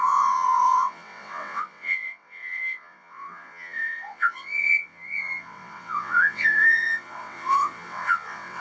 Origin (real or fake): fake